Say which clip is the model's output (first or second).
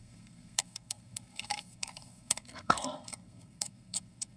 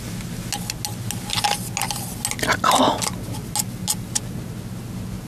first